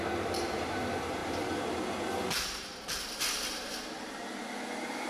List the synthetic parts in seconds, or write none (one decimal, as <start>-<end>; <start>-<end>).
0.0-1.2; 3.0-5.1